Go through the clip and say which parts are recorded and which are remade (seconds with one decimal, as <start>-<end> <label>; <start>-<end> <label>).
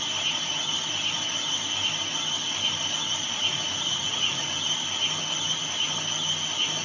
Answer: 0.0-3.4 recorded; 3.4-4.5 remade; 4.5-6.8 recorded